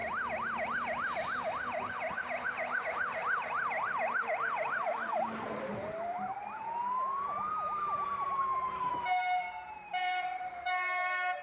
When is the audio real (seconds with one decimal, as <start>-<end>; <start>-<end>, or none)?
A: 0.0-2.8; 6.8-9.7